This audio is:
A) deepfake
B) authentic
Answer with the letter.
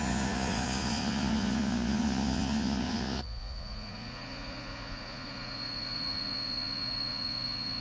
A